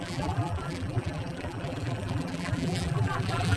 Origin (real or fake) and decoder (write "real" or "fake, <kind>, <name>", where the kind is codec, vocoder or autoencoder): fake, vocoder, BigVGAN v2